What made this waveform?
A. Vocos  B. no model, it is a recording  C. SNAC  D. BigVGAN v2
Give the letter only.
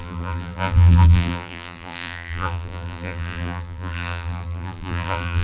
D